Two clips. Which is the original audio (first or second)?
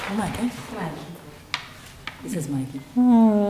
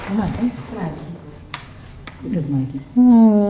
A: first